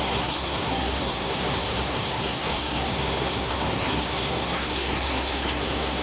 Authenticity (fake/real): fake